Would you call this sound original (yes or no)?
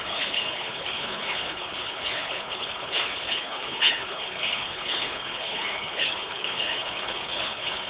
no